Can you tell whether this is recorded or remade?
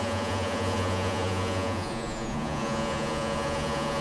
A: remade